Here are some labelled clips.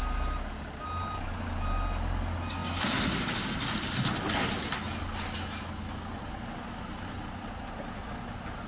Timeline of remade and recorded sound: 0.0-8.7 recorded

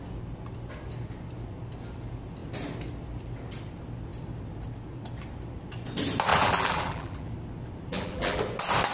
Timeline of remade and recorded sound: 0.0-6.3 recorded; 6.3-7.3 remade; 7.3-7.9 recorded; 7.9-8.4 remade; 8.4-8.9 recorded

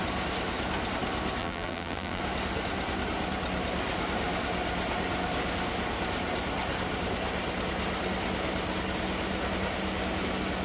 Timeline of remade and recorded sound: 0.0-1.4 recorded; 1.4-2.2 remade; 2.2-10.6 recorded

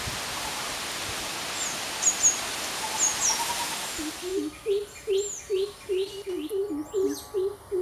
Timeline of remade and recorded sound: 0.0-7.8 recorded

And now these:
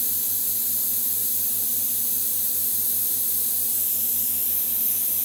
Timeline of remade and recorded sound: 0.0-5.2 recorded

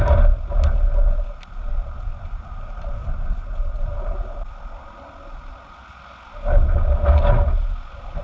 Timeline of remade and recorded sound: 0.0-1.7 recorded; 1.7-3.0 remade; 3.0-8.2 recorded

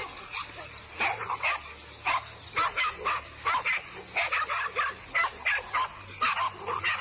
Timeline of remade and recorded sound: 0.0-7.0 recorded

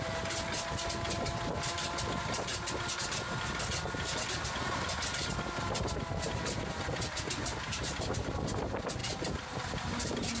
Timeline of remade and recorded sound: 0.0-10.4 recorded